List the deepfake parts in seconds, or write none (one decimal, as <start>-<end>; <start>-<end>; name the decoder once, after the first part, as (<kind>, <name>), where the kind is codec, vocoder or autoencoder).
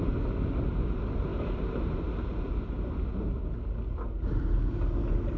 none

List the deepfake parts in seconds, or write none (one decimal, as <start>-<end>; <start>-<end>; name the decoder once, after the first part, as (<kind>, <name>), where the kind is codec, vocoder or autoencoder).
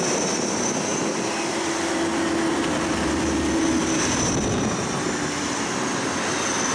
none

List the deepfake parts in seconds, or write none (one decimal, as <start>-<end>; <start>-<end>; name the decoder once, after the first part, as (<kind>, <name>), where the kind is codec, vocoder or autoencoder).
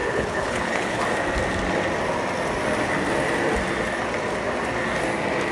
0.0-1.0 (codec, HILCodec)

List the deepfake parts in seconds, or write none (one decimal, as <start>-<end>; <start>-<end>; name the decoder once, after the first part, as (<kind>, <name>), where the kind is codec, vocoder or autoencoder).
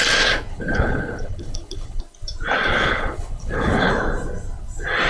0.5-2.0 (codec, HILCodec); 2.7-3.9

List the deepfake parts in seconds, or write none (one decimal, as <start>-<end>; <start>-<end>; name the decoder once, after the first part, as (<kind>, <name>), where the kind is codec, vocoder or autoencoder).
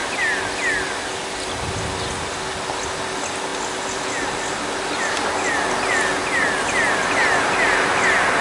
none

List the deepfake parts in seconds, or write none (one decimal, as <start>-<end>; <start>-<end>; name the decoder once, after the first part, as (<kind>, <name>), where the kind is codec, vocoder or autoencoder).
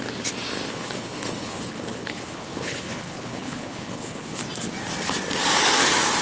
0.7-4.4 (codec, HILCodec)